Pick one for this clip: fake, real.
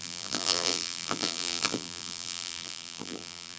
fake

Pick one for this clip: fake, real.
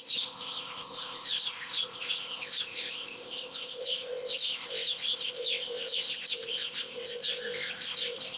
fake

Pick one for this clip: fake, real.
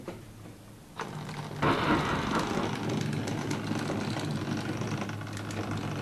real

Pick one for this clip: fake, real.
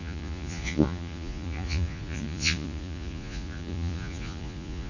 fake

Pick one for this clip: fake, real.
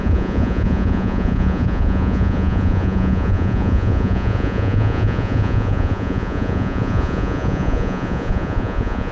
fake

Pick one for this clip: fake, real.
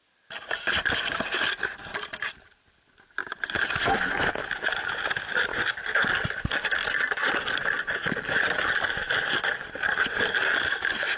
real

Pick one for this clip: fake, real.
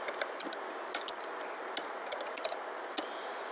real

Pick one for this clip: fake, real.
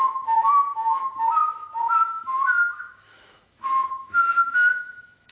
fake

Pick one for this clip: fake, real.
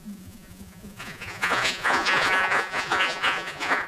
fake